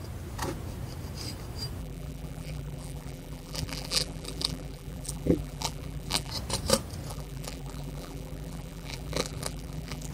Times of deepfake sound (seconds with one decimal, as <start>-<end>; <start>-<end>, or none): 1.8-6.3; 7.1-10.1